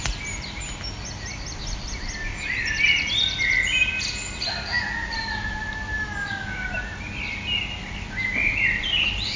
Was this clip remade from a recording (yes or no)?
no